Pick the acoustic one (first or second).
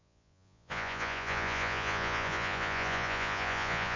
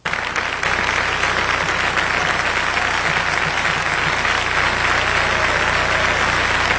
second